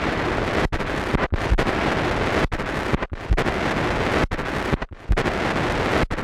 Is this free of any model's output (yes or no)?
yes